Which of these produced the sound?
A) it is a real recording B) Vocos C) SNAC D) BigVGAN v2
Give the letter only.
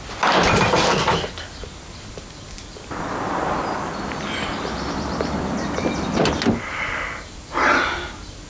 A